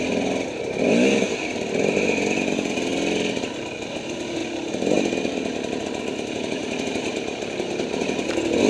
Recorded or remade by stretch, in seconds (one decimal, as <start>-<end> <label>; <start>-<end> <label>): 0.0-8.7 recorded